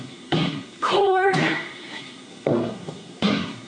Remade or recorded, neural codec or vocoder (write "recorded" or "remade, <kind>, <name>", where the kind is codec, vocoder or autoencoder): remade, codec, SNAC